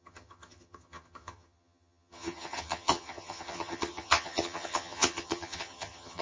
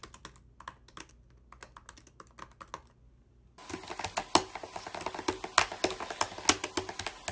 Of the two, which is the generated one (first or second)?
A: first